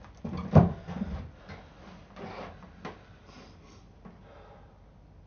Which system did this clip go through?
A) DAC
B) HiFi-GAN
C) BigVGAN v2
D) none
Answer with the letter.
D